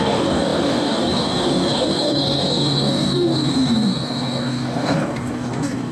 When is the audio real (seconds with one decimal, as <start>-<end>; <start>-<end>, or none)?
none